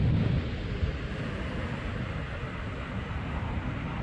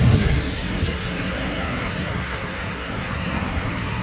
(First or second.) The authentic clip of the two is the first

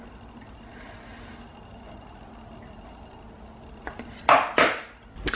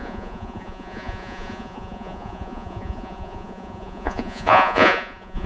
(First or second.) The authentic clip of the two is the first